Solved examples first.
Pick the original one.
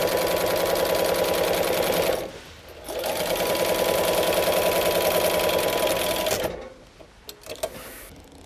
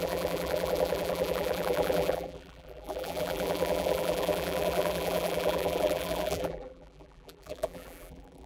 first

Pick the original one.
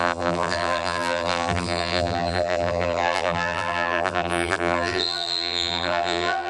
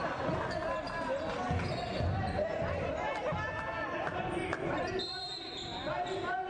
second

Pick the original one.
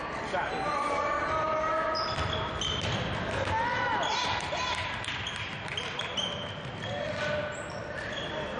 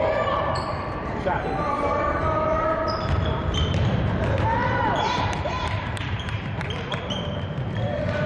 first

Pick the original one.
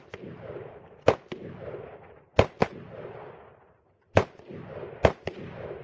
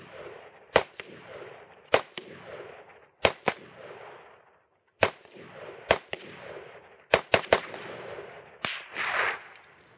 first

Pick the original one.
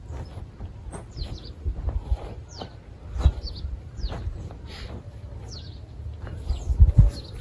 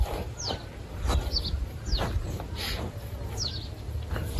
second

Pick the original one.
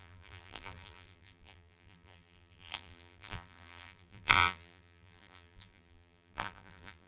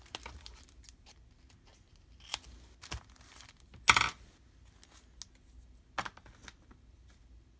second